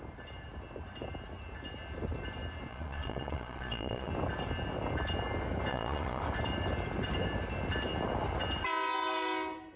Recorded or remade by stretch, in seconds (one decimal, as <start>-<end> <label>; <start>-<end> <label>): 0.0-2.7 recorded; 2.7-4.1 remade; 4.1-5.7 recorded; 5.7-6.2 remade; 6.2-9.8 recorded